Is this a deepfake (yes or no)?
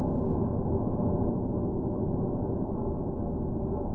no